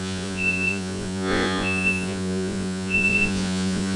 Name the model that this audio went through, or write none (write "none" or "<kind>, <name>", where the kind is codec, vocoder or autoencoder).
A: vocoder, Vocos